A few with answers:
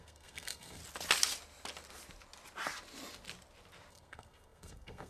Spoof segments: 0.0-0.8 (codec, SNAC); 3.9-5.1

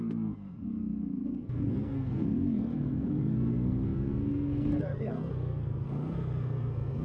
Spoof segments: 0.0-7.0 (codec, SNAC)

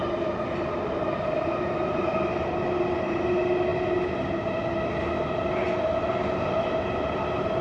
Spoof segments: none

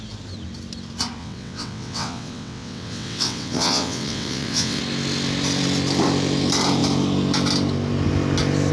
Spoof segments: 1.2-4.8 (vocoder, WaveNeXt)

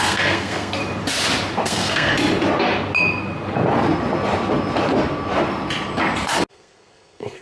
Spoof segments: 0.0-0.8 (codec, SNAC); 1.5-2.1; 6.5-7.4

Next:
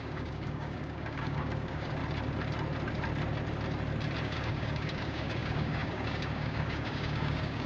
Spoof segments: 0.0-2.0 (codec, DAC); 4.2-7.7

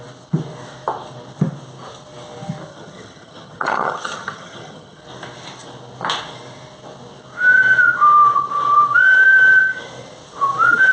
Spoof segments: 2.7-5.0 (vocoder, HiFi-GAN)